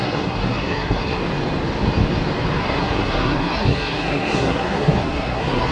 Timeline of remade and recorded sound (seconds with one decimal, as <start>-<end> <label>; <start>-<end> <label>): 0.0-1.2 remade; 1.2-2.6 recorded; 2.6-5.7 remade

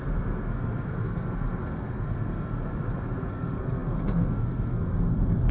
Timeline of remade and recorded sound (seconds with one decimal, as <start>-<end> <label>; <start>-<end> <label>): 0.0-2.6 remade; 2.6-3.3 recorded; 3.3-5.5 remade

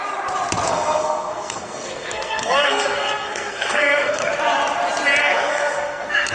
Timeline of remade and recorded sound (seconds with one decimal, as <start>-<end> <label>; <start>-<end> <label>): 0.0-0.7 recorded; 0.7-4.3 remade; 4.3-5.2 recorded; 5.2-6.3 remade

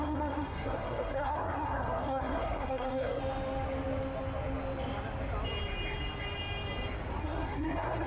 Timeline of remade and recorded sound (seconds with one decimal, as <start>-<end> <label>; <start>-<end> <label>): 0.0-3.2 remade; 3.2-7.2 recorded; 7.2-8.1 remade

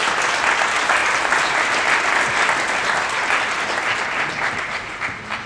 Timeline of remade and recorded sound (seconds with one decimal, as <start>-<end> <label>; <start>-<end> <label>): 0.0-5.5 recorded

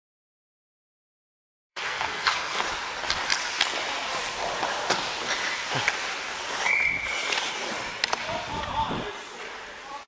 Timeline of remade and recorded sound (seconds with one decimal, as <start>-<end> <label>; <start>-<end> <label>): 0.0-1.7 recorded; 1.7-2.6 remade; 2.6-10.1 recorded

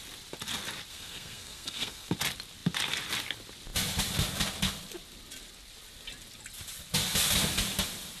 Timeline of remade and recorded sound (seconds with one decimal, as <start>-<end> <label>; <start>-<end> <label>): 0.0-0.9 recorded; 0.9-2.1 remade; 2.1-8.2 recorded